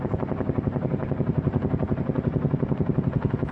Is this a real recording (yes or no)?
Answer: yes